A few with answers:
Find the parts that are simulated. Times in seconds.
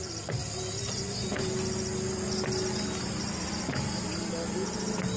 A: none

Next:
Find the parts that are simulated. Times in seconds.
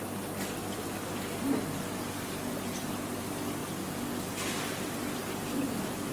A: none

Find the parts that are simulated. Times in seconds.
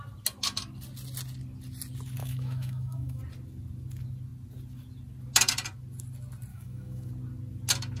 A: 2.2-3.2 (autoencoder, DAC-VAE); 6.5-7.1